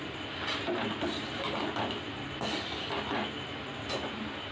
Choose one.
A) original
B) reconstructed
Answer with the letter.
A